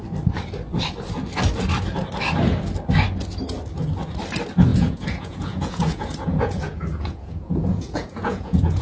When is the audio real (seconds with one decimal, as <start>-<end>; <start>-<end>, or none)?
0.0-4.7